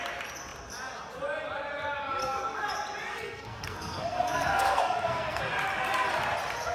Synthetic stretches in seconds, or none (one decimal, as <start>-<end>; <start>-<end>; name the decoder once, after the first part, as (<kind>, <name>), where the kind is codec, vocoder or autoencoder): 2.2-2.7 (codec, SNAC); 3.1-5.4